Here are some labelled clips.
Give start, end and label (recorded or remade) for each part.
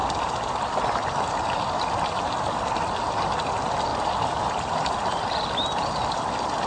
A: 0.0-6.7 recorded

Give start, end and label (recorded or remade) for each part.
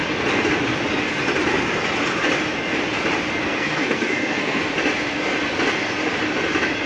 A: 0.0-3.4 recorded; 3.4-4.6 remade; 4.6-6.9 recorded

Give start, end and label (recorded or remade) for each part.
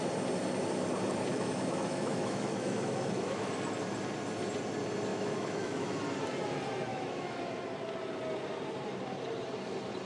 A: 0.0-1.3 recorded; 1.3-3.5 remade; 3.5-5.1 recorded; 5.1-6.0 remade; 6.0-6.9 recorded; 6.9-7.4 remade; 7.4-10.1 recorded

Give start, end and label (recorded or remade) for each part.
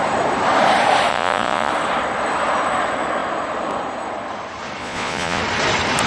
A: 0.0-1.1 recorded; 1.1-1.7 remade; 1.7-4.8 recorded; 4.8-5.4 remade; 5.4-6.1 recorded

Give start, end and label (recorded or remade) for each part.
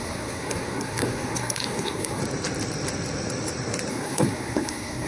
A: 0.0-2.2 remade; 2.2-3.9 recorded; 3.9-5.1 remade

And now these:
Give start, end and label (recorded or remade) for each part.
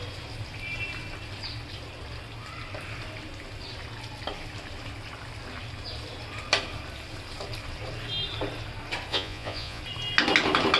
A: 0.0-9.1 recorded; 9.1-9.8 remade; 9.8-10.8 recorded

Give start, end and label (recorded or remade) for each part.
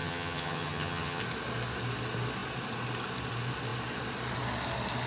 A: 0.0-1.2 remade; 1.2-5.1 recorded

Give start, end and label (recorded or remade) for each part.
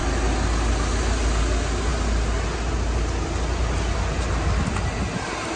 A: 0.0-5.6 recorded